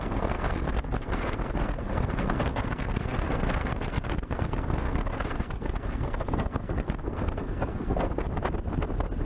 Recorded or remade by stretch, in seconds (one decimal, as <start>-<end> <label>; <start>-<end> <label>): 0.0-8.3 remade; 8.3-9.2 recorded